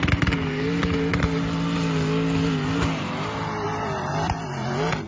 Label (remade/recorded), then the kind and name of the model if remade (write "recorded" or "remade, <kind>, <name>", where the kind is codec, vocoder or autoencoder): recorded